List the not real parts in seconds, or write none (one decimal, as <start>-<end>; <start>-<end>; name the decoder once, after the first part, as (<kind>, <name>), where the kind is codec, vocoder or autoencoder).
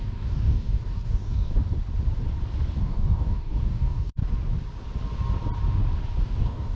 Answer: 0.0-1.5 (codec, DAC); 2.8-4.2; 6.2-6.8